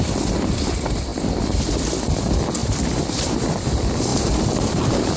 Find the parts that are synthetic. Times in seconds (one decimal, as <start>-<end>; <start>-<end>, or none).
0.0-5.2